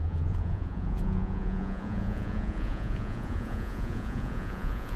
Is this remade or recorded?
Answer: remade